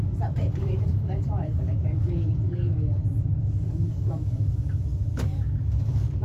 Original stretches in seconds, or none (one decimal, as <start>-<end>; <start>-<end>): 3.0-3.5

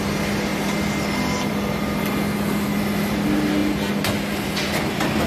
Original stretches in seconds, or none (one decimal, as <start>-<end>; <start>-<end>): 0.0-5.3

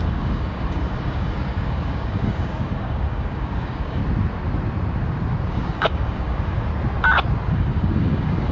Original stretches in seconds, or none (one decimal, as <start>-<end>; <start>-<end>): 4.0-5.5; 6.7-7.5

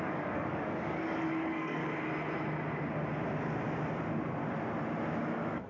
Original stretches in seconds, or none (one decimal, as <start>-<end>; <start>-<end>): 1.8-5.2

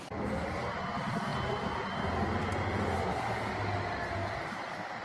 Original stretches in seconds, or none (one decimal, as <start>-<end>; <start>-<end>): 0.0-5.0

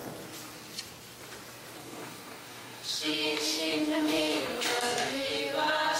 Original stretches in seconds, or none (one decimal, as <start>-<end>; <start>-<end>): 0.0-1.8; 5.4-6.0